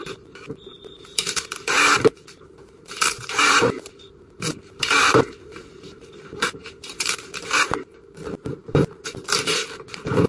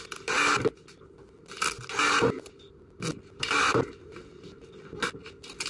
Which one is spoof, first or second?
first